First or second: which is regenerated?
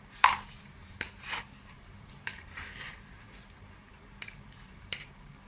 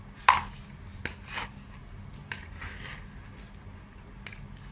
first